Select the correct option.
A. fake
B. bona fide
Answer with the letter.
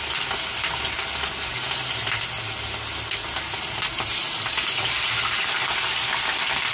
B